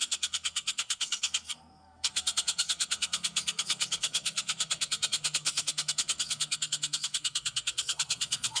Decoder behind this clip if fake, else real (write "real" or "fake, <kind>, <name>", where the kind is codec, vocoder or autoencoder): fake, codec, SNAC